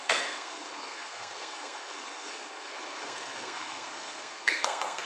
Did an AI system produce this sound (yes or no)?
yes